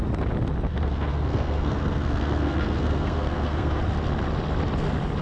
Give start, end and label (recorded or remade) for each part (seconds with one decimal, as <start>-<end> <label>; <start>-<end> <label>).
0.0-0.7 recorded; 0.7-3.8 remade; 3.8-5.2 recorded